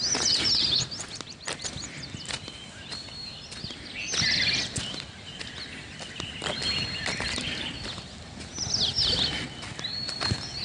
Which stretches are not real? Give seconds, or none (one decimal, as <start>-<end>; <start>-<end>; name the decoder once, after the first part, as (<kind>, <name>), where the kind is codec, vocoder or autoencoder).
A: none